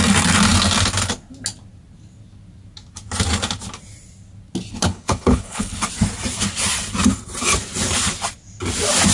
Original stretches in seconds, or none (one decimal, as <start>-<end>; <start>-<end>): 0.0-4.7; 5.9-9.1